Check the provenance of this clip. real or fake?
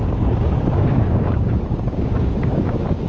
fake